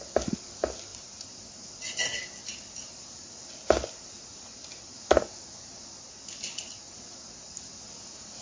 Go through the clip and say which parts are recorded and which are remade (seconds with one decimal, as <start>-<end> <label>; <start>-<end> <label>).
0.0-0.9 recorded; 0.9-1.4 remade; 1.4-8.4 recorded